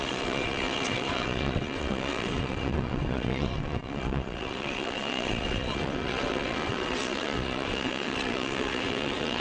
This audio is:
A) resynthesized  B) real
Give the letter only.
A